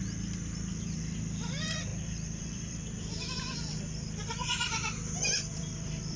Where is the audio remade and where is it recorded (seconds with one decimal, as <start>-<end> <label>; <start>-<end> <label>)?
0.0-1.9 remade; 1.9-2.4 recorded; 2.4-6.2 remade